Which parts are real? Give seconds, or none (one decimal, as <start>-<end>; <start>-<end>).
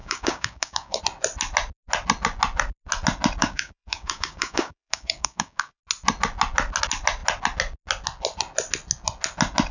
1.0-3.4; 5.8-9.7